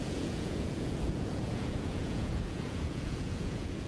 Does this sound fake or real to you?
fake